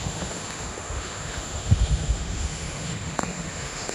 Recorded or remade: remade